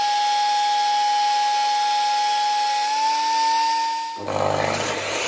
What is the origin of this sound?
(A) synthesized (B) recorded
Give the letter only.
B